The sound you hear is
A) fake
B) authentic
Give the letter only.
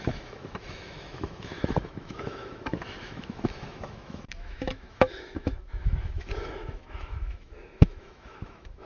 A